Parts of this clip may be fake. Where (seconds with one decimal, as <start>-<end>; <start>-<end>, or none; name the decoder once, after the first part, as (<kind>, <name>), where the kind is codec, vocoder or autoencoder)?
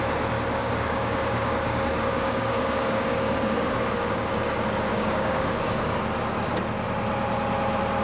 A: 0.6-4.3 (codec, DAC); 4.9-6.0